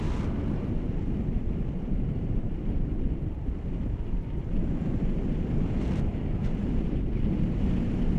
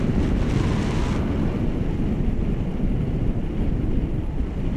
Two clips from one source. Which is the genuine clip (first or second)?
second